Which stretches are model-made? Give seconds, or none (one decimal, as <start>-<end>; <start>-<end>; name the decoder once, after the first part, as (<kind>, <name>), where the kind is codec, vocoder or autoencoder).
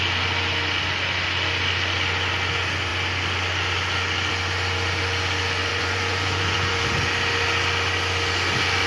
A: 5.7-6.8 (vocoder, Vocos)